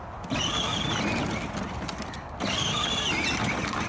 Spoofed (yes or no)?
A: no